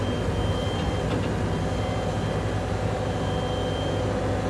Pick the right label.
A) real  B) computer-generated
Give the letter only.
A